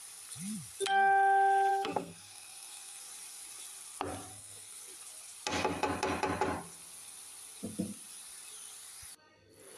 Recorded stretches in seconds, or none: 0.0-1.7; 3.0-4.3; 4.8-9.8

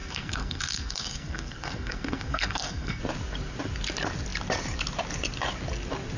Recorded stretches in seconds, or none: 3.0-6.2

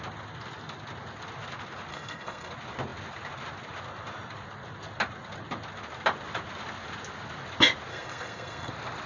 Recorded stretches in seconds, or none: 0.0-1.9; 2.5-7.9; 8.7-9.1

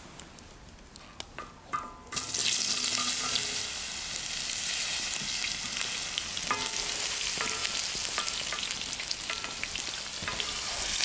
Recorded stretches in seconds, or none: 0.0-11.0

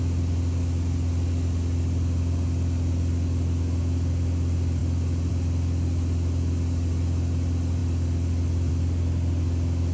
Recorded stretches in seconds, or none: 0.0-9.9